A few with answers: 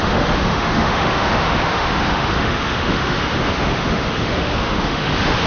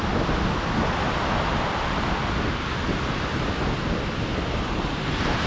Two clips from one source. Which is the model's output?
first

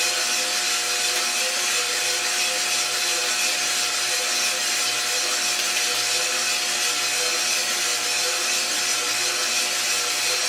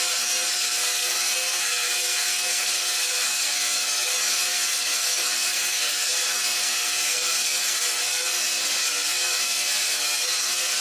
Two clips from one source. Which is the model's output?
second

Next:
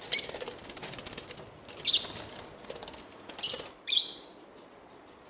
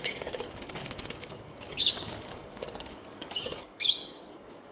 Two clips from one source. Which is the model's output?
second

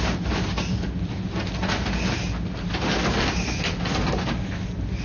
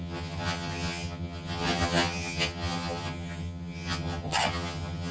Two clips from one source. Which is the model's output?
second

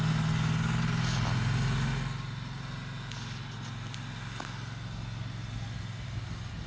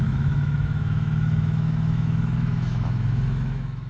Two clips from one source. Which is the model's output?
second